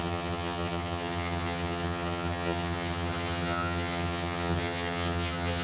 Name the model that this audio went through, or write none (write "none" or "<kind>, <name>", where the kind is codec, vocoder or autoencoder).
vocoder, HiFi-GAN